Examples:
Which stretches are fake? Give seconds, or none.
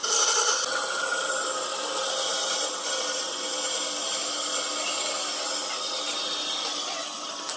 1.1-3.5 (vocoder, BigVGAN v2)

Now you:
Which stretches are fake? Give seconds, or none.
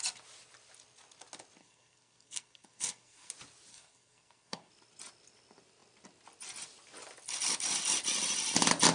1.6-3.3 (codec, SNAC); 3.7-4.7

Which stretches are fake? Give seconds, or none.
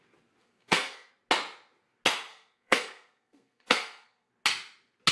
0.4-1.1 (codec, SNAC); 2.3-4.3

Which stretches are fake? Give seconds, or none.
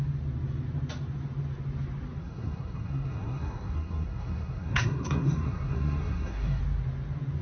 2.2-6.6 (codec, SNAC)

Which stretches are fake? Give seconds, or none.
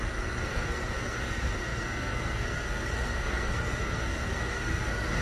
0.0-5.2 (codec, SNAC)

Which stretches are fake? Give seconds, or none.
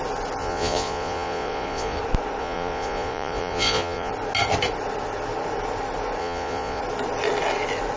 0.4-2.0 (vocoder, Vocos); 2.4-4.1; 6.2-6.8